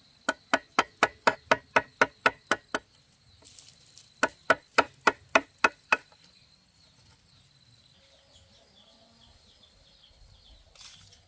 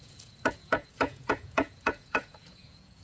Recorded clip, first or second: first